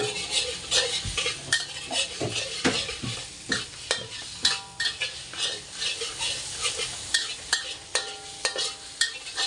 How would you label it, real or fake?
real